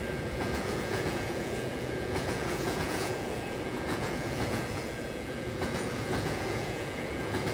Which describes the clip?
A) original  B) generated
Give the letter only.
B